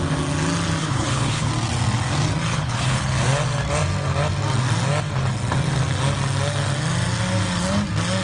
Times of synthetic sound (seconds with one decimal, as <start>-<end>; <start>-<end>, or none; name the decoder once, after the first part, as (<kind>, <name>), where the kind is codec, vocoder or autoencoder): 0.8-1.5 (codec, HILCodec); 2.5-3.0